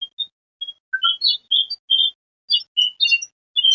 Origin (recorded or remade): recorded